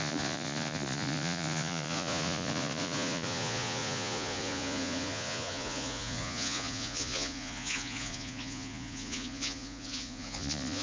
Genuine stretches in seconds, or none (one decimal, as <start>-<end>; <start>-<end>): none